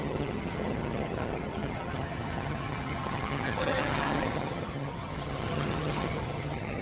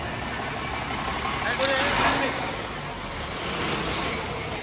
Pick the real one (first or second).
second